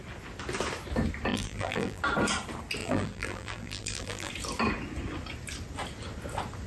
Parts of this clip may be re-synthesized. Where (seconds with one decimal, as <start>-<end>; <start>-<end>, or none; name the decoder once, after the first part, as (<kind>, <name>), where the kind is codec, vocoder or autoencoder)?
1.3-2.0 (vocoder, BigVGAN v2); 2.8-4.3